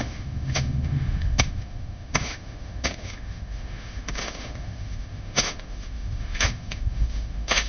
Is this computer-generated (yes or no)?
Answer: yes